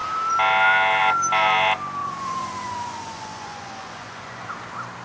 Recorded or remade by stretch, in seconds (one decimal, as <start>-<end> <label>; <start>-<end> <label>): 0.0-2.0 recorded; 2.0-4.5 remade; 4.5-5.0 recorded